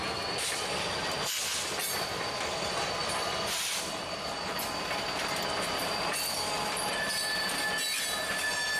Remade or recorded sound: recorded